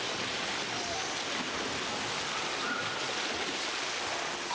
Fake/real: real